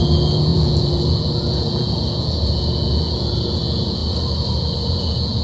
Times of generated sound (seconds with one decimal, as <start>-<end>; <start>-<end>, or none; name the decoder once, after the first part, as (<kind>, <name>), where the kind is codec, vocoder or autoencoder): 0.0-4.0 (vocoder, Vocos); 4.8-5.4